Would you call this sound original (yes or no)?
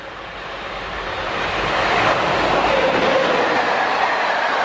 no